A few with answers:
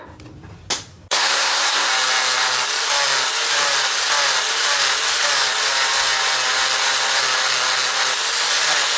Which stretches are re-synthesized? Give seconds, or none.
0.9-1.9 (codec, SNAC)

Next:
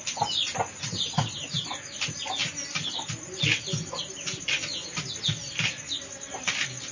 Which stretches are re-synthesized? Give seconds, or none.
none

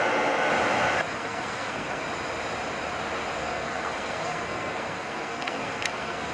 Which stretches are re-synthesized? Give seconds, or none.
1.1-2.0 (codec, SNAC); 3.4-6.3

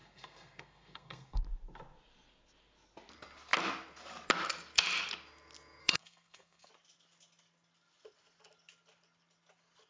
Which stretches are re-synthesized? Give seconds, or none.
0.0-1.4 (codec, SNAC); 5.8-6.7

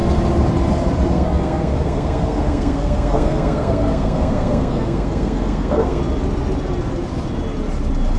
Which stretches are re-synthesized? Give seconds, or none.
1.1-6.0 (codec, SNAC)

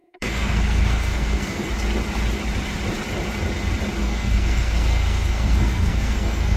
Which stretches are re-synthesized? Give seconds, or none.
0.0-1.7 (codec, SNAC); 4.0-6.6

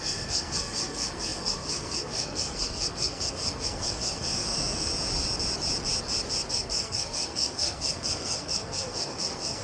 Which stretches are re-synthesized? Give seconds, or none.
0.0-4.9 (codec, SNAC); 6.5-9.6

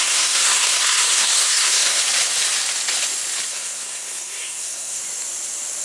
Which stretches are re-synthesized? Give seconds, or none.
0.0-2.0 (codec, SNAC); 3.5-5.0